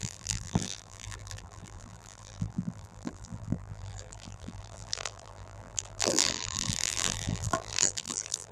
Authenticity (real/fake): fake